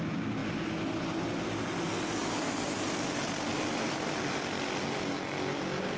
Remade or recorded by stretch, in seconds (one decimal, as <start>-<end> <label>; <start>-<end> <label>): 0.0-6.0 recorded